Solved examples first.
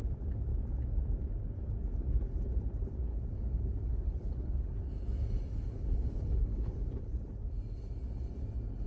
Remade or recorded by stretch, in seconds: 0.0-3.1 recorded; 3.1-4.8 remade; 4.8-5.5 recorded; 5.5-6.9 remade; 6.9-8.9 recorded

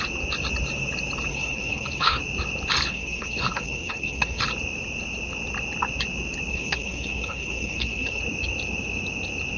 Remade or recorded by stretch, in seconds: 0.0-1.3 recorded; 1.3-2.2 remade; 2.2-2.9 recorded; 2.9-4.4 remade; 4.4-6.5 recorded; 6.5-8.2 remade; 8.2-9.6 recorded

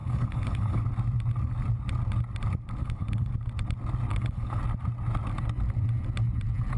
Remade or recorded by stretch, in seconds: 0.0-0.8 remade; 0.8-2.8 recorded; 2.8-3.3 remade; 3.3-4.1 recorded; 4.1-4.6 remade; 4.6-6.8 recorded

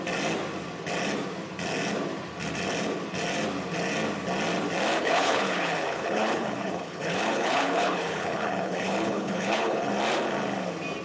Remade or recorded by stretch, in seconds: 0.0-5.0 recorded; 5.0-9.9 remade; 9.9-11.0 recorded

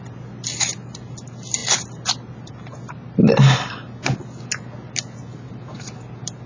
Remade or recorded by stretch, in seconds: 0.0-6.5 recorded

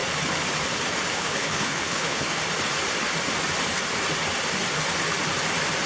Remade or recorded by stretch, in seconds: 0.0-1.1 recorded; 1.1-2.4 remade; 2.4-5.9 recorded